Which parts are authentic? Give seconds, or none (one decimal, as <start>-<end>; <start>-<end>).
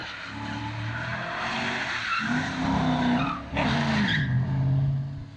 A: 0.0-5.4